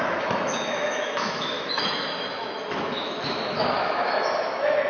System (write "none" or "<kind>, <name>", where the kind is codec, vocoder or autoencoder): autoencoder, DAC-VAE